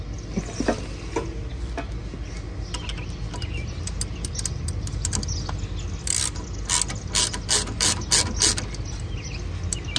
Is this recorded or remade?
recorded